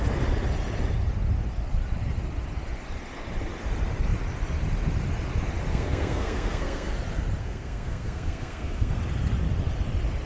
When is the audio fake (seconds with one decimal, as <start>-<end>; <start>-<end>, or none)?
5.7-6.9; 7.4-9.0